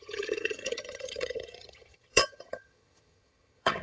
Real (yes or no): no